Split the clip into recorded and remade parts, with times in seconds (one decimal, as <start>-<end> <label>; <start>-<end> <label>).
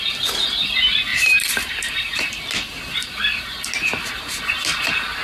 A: 0.0-1.1 recorded; 1.1-1.7 remade; 1.7-5.2 recorded